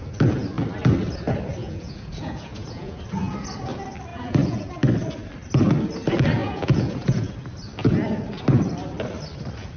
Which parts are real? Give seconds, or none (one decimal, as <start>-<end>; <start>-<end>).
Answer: 0.0-1.6; 3.0-4.1; 4.7-6.4; 7.3-9.8